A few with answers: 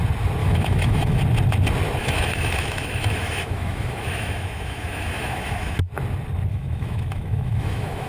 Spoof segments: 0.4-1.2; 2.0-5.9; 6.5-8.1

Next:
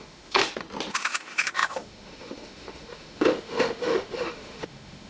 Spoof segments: 0.0-0.4; 0.9-5.1

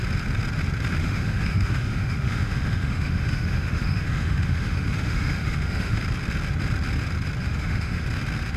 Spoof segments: 1.0-6.0; 7.4-8.0

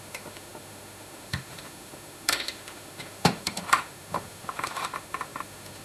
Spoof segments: 0.0-5.8